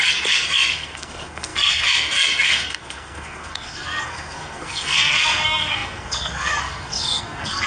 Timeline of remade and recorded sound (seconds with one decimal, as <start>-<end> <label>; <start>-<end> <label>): 0.0-7.7 remade